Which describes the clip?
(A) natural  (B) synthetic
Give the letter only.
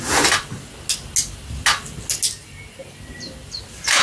A